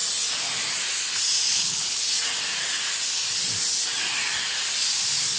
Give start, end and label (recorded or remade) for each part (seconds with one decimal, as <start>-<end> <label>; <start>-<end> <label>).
0.0-1.5 recorded; 1.5-2.0 remade; 2.0-5.4 recorded